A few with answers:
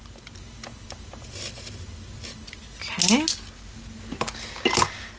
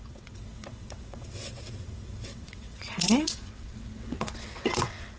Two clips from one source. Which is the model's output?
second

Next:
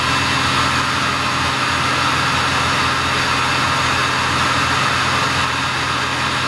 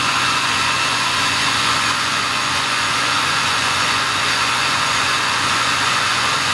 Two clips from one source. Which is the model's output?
second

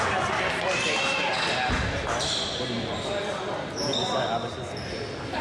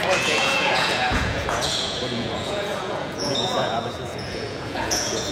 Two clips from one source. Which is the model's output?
second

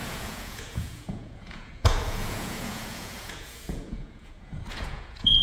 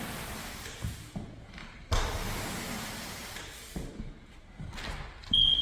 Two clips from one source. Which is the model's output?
first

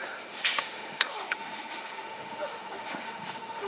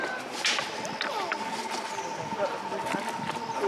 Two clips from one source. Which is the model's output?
first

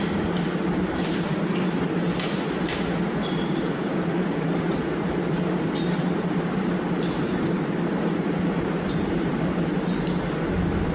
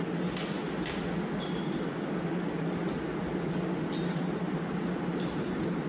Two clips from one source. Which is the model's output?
first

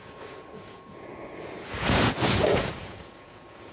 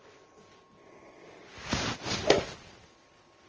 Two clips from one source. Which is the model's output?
first